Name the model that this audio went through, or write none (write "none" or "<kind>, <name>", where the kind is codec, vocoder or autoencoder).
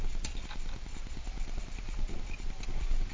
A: none